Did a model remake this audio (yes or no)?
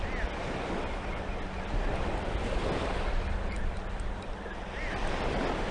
no